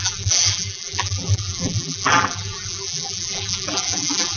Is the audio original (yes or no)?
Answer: no